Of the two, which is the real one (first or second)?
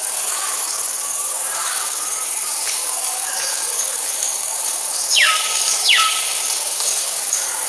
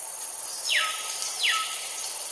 second